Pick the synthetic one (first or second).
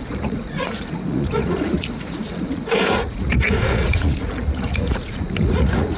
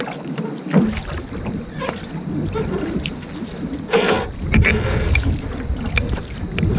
first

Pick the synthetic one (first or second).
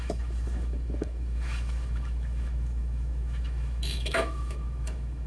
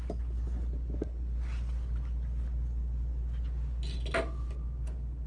first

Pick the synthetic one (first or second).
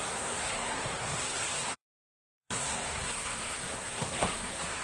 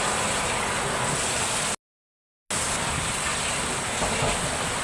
first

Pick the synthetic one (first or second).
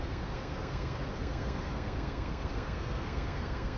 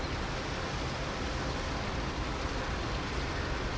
first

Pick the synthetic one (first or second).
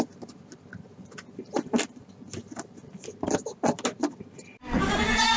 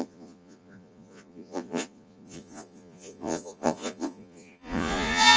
second